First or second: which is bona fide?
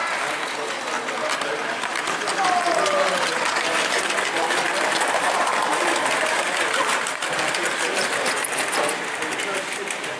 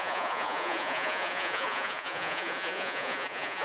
first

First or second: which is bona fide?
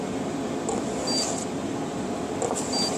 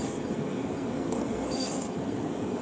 first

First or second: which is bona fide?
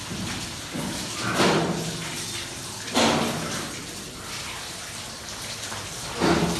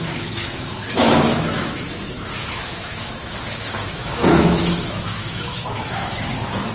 first